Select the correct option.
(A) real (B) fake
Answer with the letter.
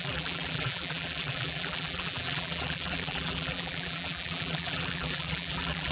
B